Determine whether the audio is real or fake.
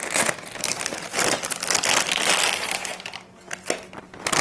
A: real